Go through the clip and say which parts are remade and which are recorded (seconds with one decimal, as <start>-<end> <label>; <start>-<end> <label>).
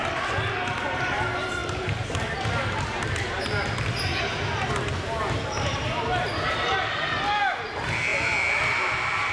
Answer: 0.0-9.3 recorded